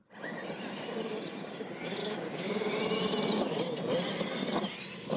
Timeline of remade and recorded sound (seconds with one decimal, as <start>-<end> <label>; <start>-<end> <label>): 0.0-2.0 recorded; 2.0-2.7 remade; 2.7-5.2 recorded